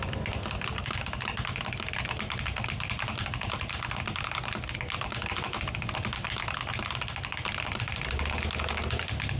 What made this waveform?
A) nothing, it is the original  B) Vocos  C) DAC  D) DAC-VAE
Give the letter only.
A